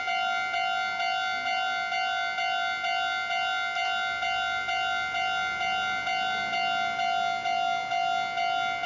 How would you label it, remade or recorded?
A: recorded